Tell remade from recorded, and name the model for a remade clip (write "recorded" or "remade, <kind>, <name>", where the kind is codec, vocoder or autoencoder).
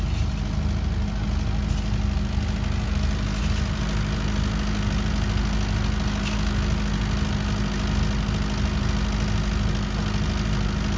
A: recorded